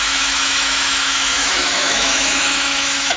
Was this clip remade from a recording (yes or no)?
yes